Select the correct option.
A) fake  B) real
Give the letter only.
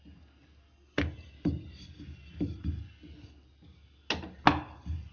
B